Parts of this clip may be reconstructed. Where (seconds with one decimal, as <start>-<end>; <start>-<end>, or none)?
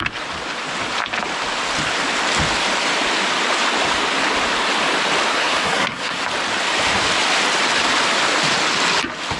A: 5.3-6.2